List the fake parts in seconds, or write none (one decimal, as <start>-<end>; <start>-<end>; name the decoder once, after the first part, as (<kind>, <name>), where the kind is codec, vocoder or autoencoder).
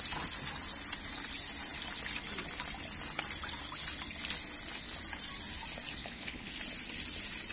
6.0-6.5 (codec, HILCodec)